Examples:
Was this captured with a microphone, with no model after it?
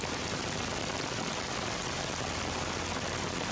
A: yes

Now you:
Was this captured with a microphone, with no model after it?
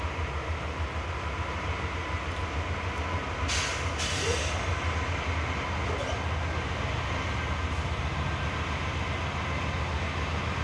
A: yes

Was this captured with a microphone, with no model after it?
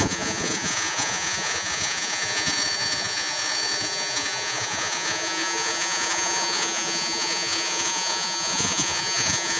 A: no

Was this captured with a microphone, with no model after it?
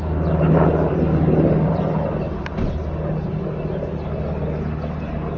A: yes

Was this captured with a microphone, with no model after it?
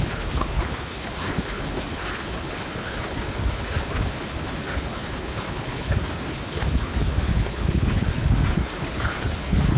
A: no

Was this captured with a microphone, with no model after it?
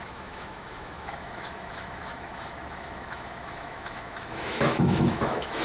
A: no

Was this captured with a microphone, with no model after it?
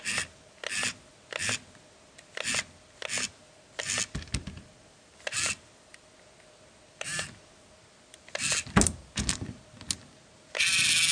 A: yes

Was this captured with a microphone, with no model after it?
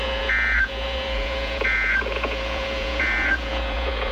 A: no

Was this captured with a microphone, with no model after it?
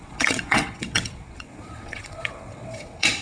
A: no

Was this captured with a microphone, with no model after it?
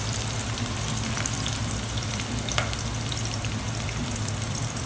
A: no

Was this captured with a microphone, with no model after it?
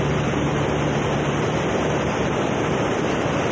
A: no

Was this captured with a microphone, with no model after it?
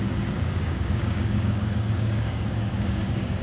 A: no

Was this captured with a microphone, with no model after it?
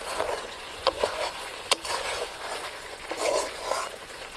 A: no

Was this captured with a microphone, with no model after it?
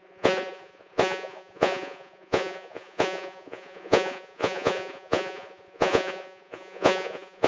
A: no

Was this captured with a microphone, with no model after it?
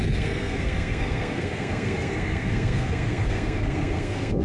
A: no